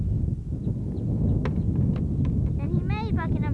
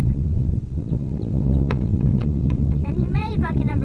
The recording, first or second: first